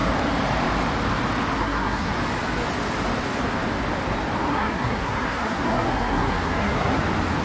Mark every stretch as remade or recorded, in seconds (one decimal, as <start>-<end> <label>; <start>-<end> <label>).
0.0-1.6 recorded; 1.6-2.1 remade; 2.1-4.5 recorded; 4.5-7.0 remade; 7.0-7.4 recorded